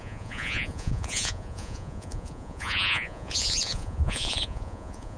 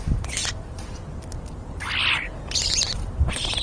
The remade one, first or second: first